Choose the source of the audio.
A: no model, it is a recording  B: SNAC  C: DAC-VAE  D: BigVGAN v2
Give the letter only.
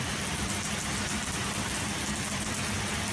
A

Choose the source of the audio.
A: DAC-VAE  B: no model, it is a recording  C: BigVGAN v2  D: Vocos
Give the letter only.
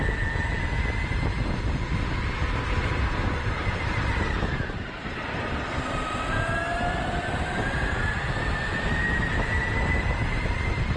B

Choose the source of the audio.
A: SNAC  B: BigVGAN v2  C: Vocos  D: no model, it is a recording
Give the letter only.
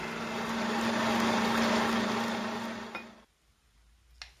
D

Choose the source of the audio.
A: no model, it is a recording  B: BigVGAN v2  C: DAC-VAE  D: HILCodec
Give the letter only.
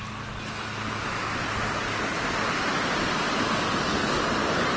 A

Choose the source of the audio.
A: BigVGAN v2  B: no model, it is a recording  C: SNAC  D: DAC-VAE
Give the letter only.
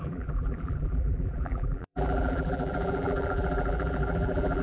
A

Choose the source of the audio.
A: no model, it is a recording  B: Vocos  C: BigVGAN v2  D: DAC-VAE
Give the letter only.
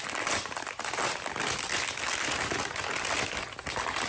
A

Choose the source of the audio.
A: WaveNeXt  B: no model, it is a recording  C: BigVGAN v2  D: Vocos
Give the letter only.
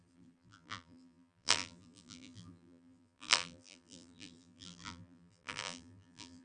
C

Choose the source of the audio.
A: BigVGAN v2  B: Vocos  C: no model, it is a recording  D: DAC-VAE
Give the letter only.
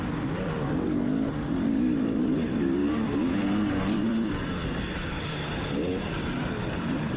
A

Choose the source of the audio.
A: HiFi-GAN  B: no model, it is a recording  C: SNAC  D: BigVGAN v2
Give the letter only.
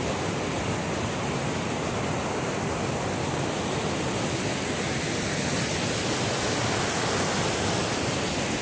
B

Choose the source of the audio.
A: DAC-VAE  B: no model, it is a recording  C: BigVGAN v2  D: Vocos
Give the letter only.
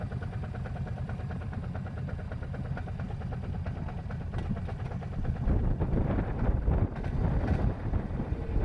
B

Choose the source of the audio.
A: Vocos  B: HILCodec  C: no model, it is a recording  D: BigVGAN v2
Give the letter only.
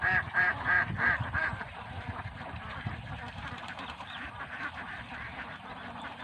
D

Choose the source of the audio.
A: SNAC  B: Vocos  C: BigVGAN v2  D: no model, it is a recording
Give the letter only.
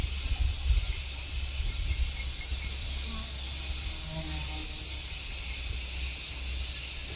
D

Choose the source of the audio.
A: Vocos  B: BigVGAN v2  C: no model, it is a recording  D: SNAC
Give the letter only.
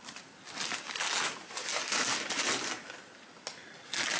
C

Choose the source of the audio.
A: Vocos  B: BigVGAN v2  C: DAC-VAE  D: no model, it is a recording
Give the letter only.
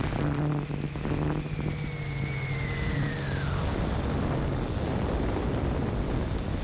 D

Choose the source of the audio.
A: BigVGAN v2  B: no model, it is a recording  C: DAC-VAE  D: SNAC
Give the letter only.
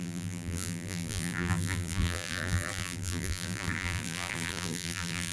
A